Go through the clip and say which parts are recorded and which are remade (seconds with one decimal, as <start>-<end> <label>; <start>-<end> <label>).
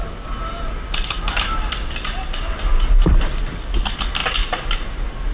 0.0-5.3 recorded